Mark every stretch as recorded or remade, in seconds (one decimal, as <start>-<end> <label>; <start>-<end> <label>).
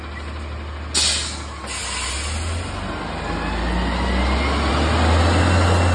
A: 0.0-5.9 recorded